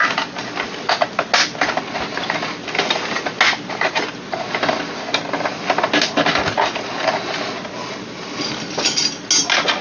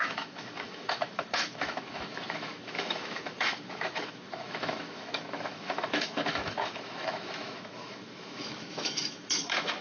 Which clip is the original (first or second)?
first